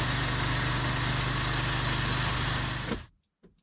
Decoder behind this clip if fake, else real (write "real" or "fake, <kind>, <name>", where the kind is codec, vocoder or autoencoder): real